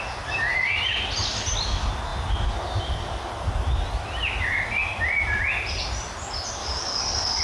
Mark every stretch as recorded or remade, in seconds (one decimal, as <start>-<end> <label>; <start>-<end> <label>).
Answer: 0.0-6.6 recorded; 6.6-7.4 remade

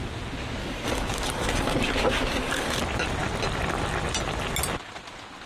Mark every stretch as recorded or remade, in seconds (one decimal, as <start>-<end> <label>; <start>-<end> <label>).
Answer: 0.0-0.6 recorded; 0.6-2.8 remade; 2.8-5.5 recorded

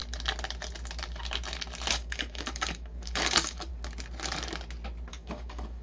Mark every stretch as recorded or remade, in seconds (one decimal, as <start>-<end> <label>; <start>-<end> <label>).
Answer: 0.0-1.9 recorded; 1.9-3.7 remade; 3.7-5.1 recorded; 5.1-5.8 remade